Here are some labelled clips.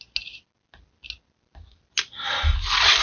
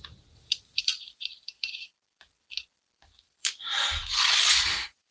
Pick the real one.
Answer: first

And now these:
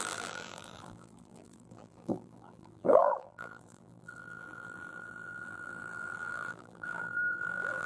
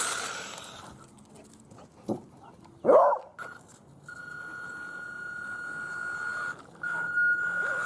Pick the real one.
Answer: second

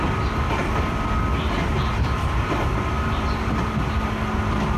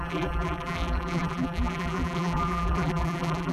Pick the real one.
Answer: first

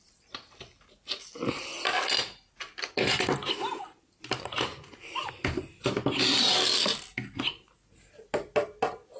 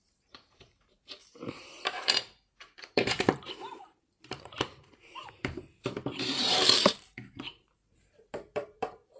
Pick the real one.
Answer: first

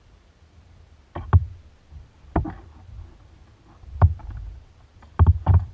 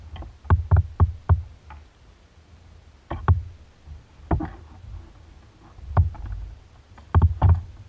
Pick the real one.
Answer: second